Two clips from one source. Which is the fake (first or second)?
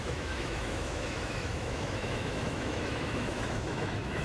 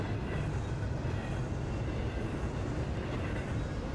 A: first